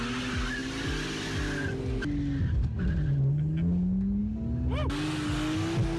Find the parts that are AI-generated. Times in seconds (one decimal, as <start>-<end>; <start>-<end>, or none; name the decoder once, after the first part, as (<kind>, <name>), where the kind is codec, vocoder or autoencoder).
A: none